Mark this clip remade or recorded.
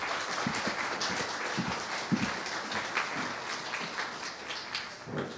recorded